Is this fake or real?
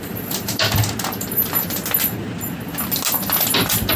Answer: real